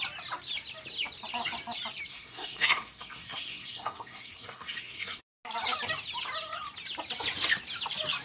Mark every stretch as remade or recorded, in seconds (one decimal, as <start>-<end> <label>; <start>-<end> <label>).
0.0-2.1 recorded; 2.1-5.2 remade; 5.2-8.2 recorded